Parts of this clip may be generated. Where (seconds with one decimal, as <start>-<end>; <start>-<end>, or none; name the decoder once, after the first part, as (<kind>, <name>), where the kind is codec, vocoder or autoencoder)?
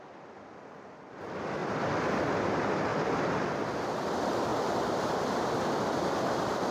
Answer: 1.6-2.3 (vocoder, BigVGAN v2); 2.9-3.5; 4.5-6.1